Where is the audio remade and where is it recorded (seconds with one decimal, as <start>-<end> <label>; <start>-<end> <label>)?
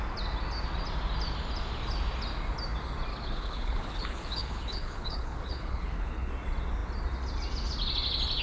0.0-3.1 recorded; 3.1-6.3 remade; 6.3-8.4 recorded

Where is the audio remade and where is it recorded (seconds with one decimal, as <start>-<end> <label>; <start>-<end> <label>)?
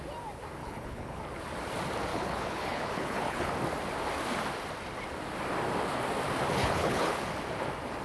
0.0-0.6 recorded; 0.6-1.2 remade; 1.2-2.1 recorded; 2.1-3.5 remade; 3.5-6.6 recorded; 6.6-7.2 remade; 7.2-8.0 recorded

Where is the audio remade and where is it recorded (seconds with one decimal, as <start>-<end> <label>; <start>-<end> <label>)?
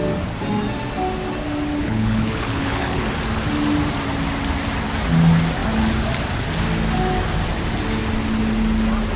0.0-1.8 recorded; 1.8-3.0 remade; 3.0-9.2 recorded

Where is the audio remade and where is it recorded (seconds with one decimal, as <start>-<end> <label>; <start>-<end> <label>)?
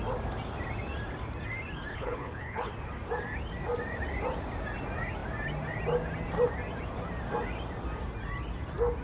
0.0-1.9 recorded; 1.9-2.7 remade; 2.7-9.0 recorded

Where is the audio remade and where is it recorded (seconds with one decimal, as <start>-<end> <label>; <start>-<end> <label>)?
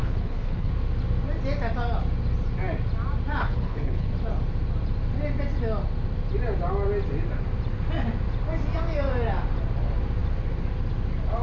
0.0-0.7 remade; 0.7-3.4 recorded; 3.4-4.1 remade; 4.1-11.4 recorded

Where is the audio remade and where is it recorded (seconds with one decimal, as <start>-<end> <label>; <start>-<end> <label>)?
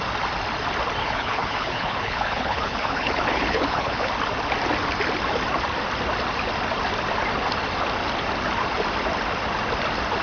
0.0-1.0 recorded; 1.0-4.1 remade; 4.1-10.2 recorded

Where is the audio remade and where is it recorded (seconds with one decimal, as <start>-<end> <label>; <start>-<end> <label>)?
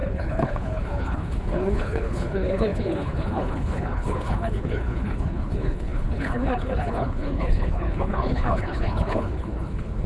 0.0-10.1 remade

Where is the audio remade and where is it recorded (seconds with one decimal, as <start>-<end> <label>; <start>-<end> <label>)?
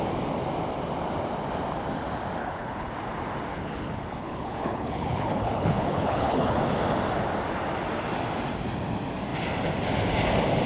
0.0-2.4 recorded; 2.4-2.9 remade; 2.9-3.5 recorded; 3.5-6.6 remade; 6.6-10.7 recorded